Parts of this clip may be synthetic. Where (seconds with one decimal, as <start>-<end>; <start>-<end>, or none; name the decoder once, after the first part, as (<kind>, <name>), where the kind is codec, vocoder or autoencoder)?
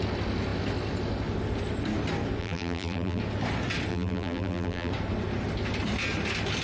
2.4-3.2 (vocoder, BigVGAN v2); 3.9-4.9